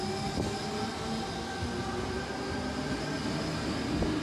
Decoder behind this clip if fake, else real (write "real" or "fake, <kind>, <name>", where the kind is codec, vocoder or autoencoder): real